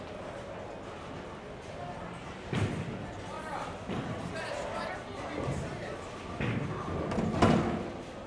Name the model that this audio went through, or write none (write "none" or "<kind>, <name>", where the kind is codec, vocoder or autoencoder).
none